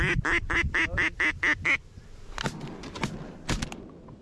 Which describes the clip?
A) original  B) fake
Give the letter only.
A